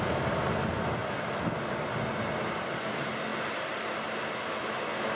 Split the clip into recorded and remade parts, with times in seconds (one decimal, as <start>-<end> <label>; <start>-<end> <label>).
0.0-5.2 recorded